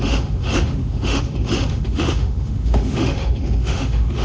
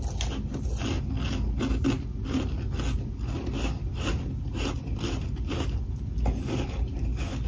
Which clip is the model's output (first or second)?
first